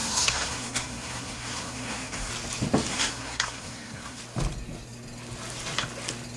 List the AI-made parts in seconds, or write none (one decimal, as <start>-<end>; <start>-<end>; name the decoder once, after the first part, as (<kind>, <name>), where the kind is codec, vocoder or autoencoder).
0.0-2.3 (codec, SNAC); 2.9-4.2